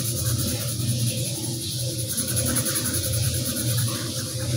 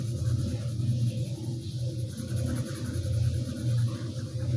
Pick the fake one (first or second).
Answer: first